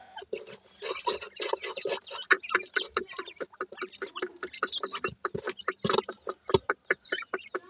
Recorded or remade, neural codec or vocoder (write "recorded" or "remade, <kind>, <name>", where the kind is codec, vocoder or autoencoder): recorded